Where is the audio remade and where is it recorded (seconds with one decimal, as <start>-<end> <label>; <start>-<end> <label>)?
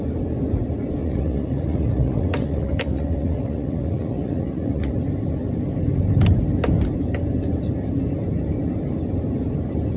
0.0-1.0 recorded; 1.0-4.9 remade; 4.9-10.0 recorded